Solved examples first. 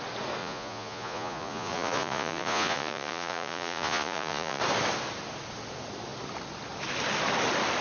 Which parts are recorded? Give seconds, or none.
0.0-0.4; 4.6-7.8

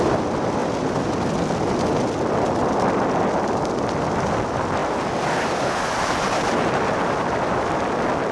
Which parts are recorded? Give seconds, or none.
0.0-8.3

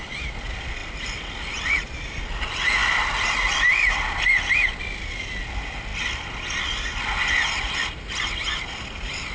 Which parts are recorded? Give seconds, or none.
0.0-9.3

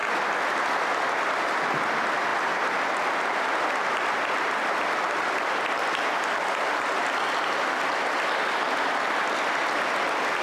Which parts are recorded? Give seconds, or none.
0.0-10.4

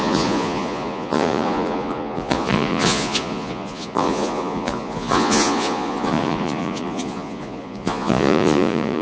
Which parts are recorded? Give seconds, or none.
none

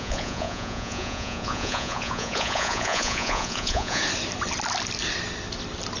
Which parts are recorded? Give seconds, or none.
4.0-6.0

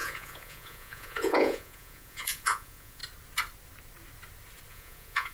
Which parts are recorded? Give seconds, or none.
3.0-4.7